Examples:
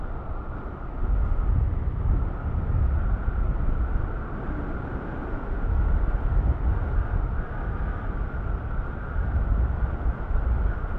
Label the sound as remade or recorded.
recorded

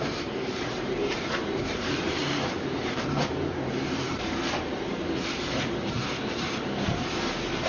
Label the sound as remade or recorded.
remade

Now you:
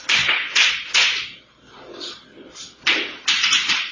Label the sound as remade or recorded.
recorded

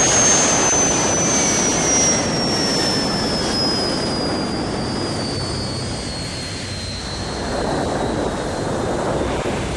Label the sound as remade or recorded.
recorded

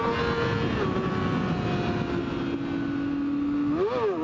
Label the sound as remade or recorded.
recorded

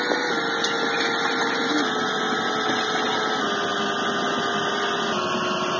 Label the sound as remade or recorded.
recorded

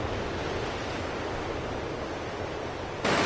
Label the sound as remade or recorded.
recorded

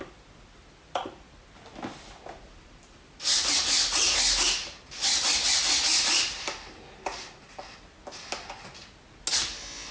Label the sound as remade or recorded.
recorded